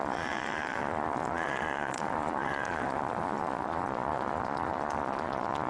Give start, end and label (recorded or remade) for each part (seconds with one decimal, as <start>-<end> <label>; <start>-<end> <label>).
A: 0.0-5.7 remade